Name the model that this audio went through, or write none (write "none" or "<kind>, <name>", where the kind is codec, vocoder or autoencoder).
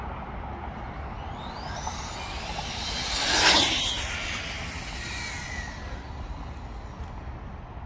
none